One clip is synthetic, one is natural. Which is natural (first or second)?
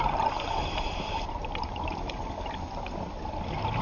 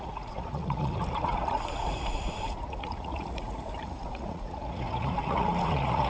first